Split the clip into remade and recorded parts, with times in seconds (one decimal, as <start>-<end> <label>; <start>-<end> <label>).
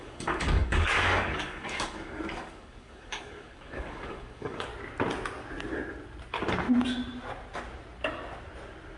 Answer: 0.0-4.7 remade; 4.7-9.0 recorded